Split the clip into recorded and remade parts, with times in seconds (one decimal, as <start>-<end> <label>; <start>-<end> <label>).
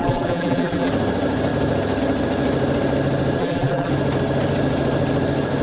0.0-0.9 remade; 0.9-3.4 recorded; 3.4-3.9 remade; 3.9-5.6 recorded